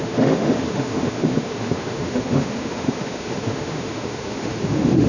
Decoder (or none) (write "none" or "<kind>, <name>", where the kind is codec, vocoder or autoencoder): autoencoder, DAC-VAE